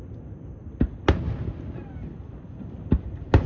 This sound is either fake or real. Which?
real